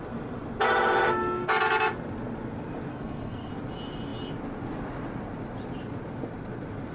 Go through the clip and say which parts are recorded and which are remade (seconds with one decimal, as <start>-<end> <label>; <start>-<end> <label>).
0.0-2.9 recorded; 2.9-3.5 remade; 3.5-6.9 recorded